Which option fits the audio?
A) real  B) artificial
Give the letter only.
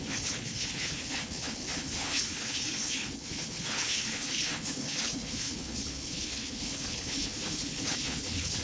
B